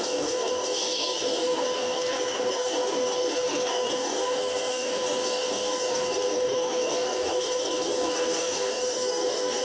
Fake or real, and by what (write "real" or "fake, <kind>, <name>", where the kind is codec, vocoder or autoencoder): fake, codec, DAC